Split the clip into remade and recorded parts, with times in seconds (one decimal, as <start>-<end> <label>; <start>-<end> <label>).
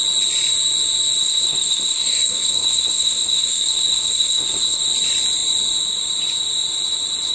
0.0-1.2 recorded; 1.2-4.8 remade; 4.8-7.3 recorded